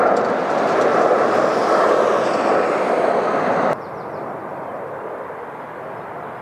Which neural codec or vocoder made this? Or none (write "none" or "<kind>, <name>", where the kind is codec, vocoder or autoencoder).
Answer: vocoder, BigVGAN v2